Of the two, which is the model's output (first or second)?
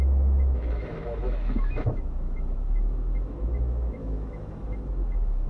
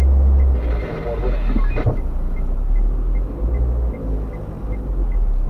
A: first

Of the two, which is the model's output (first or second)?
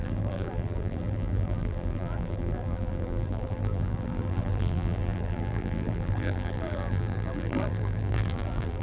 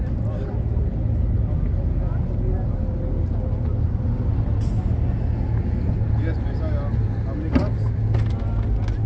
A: first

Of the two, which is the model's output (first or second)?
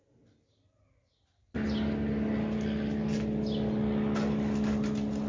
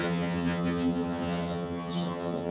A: second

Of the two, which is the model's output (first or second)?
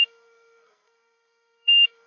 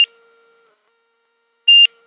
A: first